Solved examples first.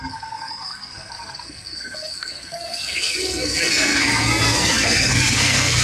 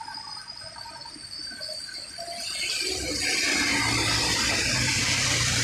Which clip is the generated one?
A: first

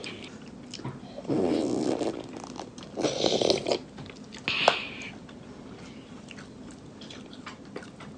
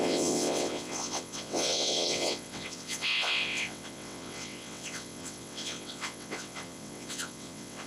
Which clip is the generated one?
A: second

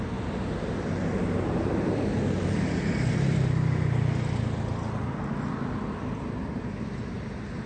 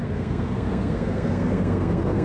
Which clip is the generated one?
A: second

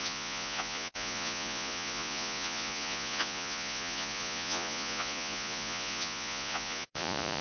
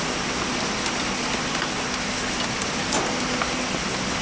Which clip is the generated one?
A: first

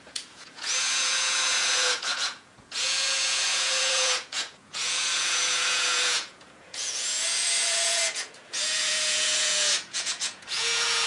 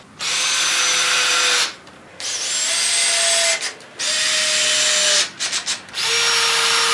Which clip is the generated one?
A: first